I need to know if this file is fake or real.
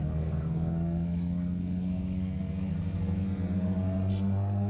fake